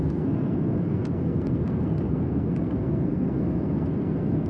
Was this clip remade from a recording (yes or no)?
yes